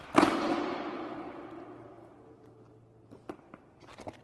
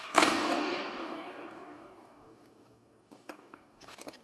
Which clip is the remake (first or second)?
second